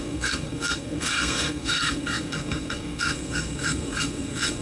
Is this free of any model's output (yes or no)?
no